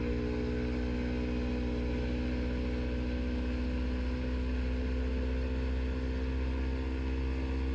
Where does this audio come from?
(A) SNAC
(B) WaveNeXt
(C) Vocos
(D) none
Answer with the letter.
D